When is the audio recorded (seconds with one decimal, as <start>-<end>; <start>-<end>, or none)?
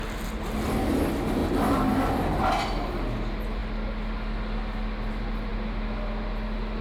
0.0-6.8